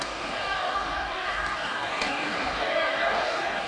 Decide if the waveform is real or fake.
fake